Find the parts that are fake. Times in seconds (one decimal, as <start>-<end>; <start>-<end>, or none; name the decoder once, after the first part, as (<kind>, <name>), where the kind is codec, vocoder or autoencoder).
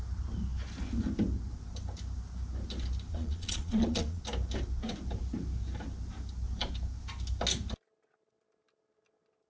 3.1-4.2 (vocoder, Vocos)